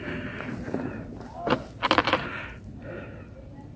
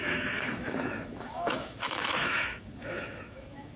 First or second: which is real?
first